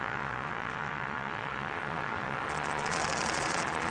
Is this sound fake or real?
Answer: fake